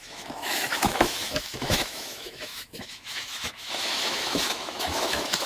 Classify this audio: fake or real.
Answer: fake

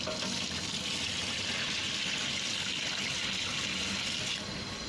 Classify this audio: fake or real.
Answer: real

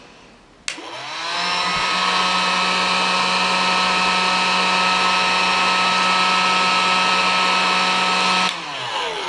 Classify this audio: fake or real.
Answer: real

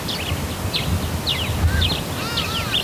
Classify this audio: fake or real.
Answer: fake